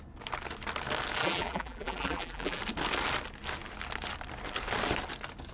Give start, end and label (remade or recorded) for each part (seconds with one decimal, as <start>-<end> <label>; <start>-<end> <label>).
0.0-1.2 recorded; 1.2-2.6 remade; 2.6-5.5 recorded